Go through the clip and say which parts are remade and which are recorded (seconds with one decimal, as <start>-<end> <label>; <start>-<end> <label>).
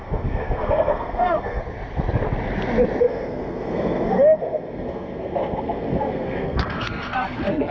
0.0-1.6 remade; 1.6-3.0 recorded; 3.0-7.7 remade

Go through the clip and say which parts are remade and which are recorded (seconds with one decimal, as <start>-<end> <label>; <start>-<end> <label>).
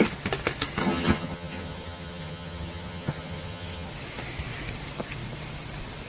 0.0-0.8 recorded; 0.8-3.9 remade; 3.9-6.1 recorded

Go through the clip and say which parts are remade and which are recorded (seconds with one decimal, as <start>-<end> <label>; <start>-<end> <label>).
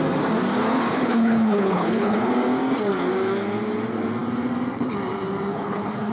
0.0-0.9 recorded; 0.9-2.3 remade; 2.3-5.5 recorded; 5.5-6.1 remade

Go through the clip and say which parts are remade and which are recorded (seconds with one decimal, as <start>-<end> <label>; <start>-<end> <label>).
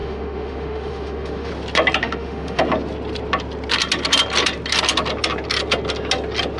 0.0-1.5 remade; 1.5-2.0 recorded; 2.0-2.6 remade; 2.6-6.6 recorded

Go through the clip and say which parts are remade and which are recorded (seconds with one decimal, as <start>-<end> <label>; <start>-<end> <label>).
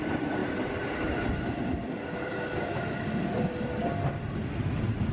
0.0-0.4 recorded; 0.4-3.5 remade; 3.5-5.1 recorded